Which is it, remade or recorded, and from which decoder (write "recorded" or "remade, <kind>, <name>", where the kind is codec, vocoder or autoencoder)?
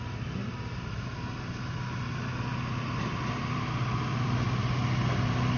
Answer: recorded